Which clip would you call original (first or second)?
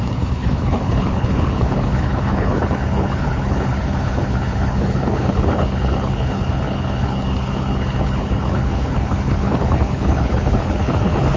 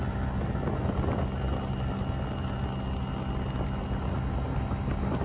second